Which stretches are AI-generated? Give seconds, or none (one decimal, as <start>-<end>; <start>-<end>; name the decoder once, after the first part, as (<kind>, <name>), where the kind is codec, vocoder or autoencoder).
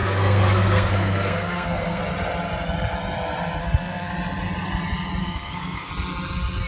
0.0-2.0 (codec, SNAC); 3.6-4.1; 5.2-5.9